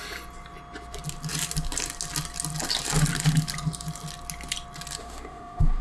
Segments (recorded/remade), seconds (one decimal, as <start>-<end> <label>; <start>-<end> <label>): 0.0-5.0 recorded; 5.0-5.8 remade